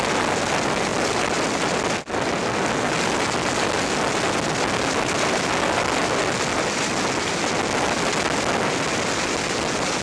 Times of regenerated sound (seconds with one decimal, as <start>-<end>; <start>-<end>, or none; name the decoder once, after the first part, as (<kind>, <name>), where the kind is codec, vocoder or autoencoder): none